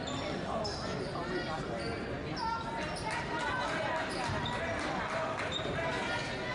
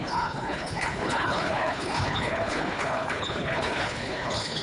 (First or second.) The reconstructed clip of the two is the second